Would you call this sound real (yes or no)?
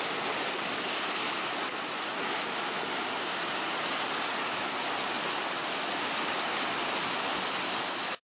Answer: yes